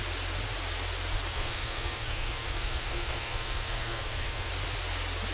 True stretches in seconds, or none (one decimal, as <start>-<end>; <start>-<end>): 0.0-1.3; 4.5-5.3